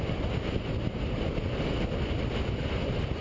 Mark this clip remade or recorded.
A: recorded